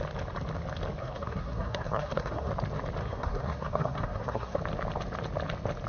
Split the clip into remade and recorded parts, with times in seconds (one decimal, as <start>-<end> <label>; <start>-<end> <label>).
0.0-1.0 recorded; 1.0-2.5 remade; 2.5-3.0 recorded; 3.0-4.6 remade; 4.6-5.9 recorded